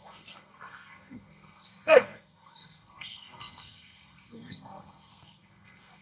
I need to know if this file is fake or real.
fake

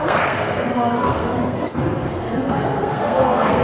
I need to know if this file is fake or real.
fake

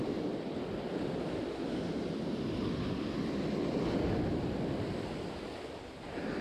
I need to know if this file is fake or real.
real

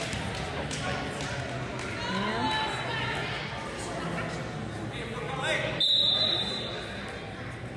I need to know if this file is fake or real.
real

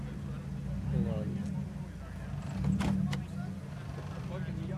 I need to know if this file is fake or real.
real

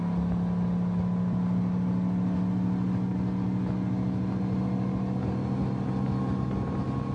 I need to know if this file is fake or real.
real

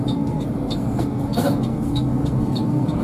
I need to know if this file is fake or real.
fake